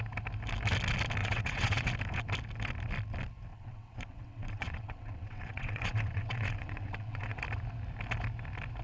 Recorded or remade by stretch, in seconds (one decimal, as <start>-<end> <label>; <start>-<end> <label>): 0.0-1.2 recorded; 1.2-1.9 remade; 1.9-3.5 recorded; 3.5-7.4 remade; 7.4-8.8 recorded